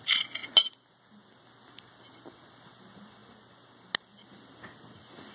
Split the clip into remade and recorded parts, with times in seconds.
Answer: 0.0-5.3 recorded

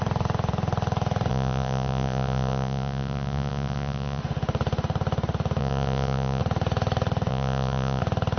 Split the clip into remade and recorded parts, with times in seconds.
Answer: 0.0-1.3 recorded; 1.3-4.2 remade; 4.2-5.6 recorded; 5.6-6.4 remade; 6.4-7.3 recorded; 7.3-8.0 remade; 8.0-8.4 recorded

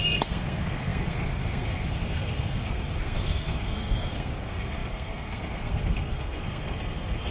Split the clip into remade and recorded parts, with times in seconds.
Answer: 0.0-7.3 remade